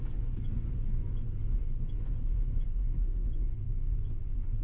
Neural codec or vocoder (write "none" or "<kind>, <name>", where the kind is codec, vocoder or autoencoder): vocoder, Vocos